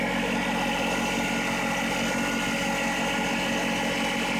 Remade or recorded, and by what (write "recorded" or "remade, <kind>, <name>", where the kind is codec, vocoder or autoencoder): recorded